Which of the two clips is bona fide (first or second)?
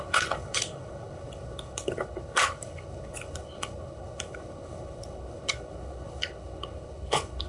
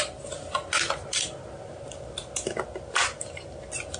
second